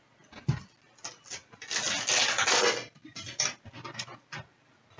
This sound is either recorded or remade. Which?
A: recorded